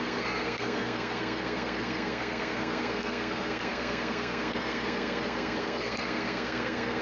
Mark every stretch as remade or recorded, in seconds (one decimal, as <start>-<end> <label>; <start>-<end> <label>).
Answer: 0.0-7.0 remade